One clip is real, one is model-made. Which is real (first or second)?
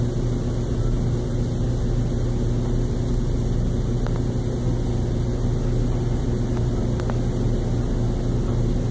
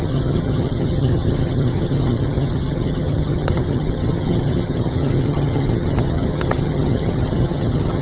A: first